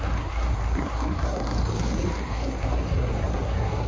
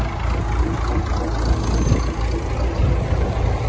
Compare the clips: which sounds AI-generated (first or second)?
first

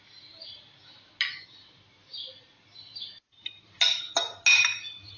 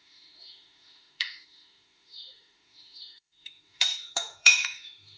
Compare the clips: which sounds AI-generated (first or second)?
second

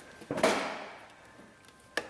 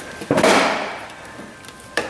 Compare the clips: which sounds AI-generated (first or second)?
second